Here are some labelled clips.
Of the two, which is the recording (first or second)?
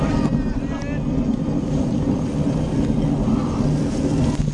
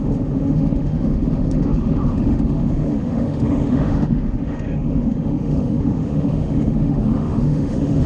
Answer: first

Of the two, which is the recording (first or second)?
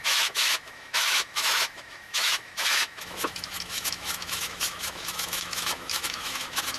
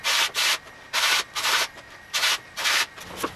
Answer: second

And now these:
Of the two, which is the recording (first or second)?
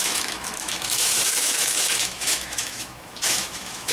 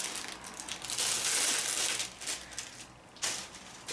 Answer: second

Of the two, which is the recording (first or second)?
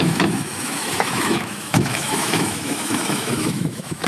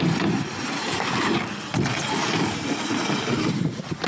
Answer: second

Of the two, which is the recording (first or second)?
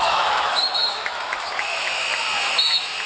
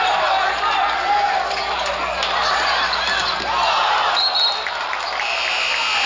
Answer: second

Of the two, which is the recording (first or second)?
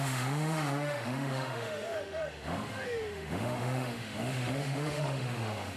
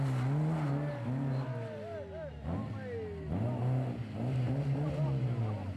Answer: second